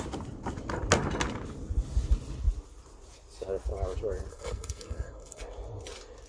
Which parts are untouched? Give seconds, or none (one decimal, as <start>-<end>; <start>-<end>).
0.0-4.3; 5.4-6.3